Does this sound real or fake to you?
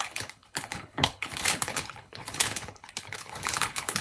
fake